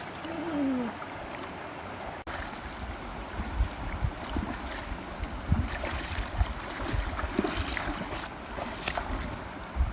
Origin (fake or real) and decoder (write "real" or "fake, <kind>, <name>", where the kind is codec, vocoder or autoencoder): real